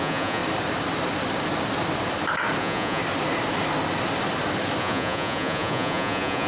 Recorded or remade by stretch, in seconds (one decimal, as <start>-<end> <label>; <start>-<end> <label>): 0.0-0.4 remade; 0.4-2.6 recorded; 2.6-3.0 remade; 3.0-4.8 recorded; 4.8-6.5 remade